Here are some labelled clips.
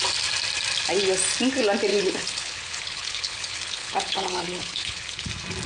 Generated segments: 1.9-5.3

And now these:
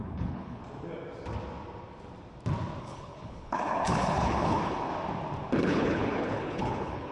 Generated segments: 0.0-0.6; 2.8-4.9; 5.6-7.1

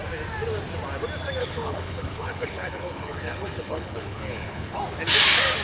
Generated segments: 1.4-4.8

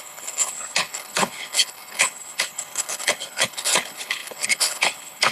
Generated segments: 0.0-5.3

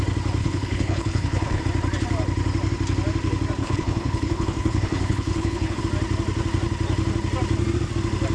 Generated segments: 0.4-1.6; 3.6-5.8

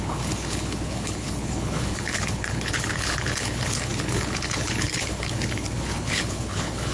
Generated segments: 0.0-6.9

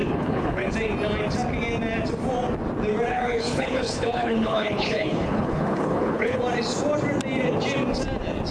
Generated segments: 0.0-0.7; 3.1-6.4